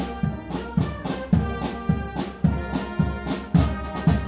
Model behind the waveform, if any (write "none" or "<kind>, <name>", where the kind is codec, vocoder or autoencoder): none